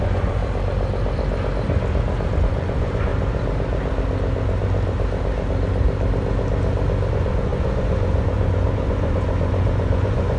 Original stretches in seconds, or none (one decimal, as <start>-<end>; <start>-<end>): 0.4-2.4; 3.1-7.1